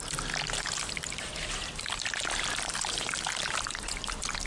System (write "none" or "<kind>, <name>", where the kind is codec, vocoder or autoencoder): none